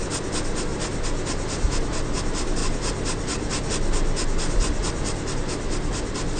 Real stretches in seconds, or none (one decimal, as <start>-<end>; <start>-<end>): 0.0-6.4